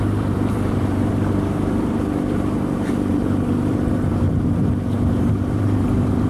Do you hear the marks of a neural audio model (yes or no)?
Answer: yes